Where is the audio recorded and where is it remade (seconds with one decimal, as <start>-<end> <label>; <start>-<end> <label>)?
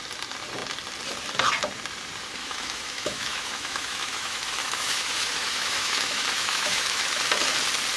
0.0-2.4 recorded; 2.4-7.2 remade; 7.2-8.0 recorded